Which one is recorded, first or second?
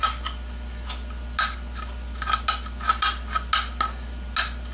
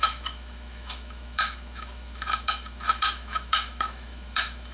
first